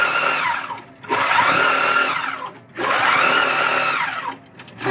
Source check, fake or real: real